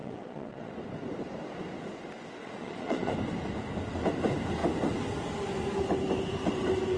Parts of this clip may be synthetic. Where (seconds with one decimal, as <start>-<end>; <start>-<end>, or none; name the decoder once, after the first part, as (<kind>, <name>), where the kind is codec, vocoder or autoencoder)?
0.0-0.7 (vocoder, Vocos); 2.4-3.1